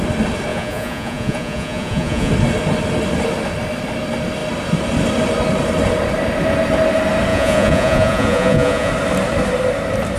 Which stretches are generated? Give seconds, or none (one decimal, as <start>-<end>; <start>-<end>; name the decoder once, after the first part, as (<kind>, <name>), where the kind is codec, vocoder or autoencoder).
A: 0.5-2.3 (vocoder, Vocos); 7.3-8.9